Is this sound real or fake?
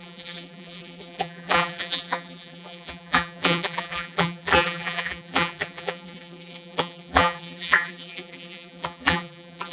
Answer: fake